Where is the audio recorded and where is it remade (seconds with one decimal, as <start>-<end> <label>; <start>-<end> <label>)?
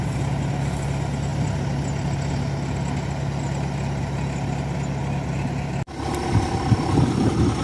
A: 0.0-7.6 recorded